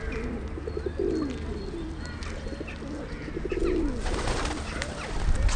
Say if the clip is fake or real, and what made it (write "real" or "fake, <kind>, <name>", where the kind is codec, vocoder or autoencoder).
real